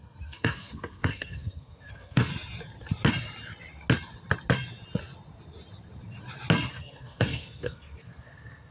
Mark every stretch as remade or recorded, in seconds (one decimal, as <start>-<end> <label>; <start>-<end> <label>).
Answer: 0.0-2.3 remade; 2.3-6.7 recorded; 6.7-8.7 remade